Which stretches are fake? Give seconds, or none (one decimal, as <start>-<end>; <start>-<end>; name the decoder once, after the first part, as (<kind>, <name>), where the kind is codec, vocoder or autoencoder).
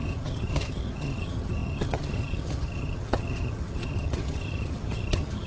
0.0-5.5 (vocoder, HiFi-GAN)